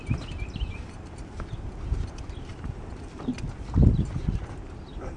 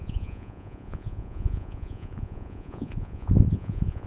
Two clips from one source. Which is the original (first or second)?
first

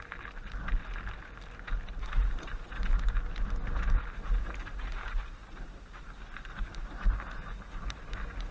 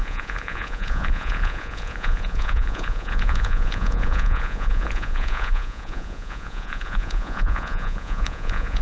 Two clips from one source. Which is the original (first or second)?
first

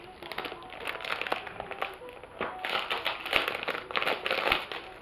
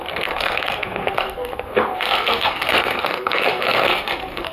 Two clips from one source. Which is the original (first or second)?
first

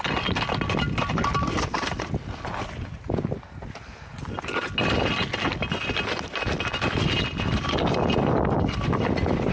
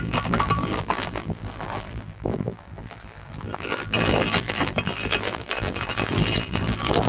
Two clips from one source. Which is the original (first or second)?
first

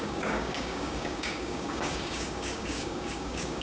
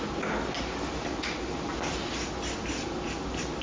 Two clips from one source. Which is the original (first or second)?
second